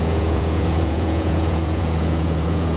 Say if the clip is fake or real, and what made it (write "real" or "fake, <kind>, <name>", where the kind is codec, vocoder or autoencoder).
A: fake, vocoder, Vocos